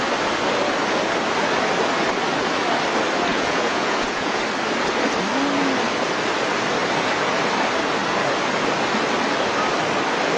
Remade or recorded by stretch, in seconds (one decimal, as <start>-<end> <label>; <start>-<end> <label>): 0.0-3.3 recorded; 3.3-4.4 remade; 4.4-10.4 recorded